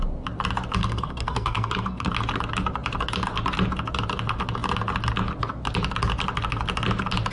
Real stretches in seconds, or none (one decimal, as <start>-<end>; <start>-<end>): 0.0-0.8; 2.1-7.3